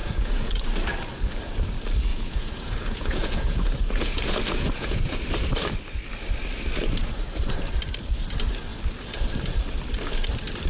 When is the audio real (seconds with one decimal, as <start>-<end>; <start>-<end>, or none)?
0.6-2.1; 5.2-10.7